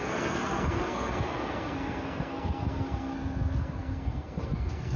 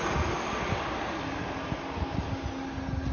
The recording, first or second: second